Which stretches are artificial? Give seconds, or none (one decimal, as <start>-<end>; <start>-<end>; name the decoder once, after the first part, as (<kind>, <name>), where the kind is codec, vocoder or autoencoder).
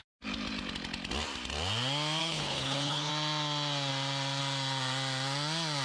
2.2-3.1 (codec, HILCodec)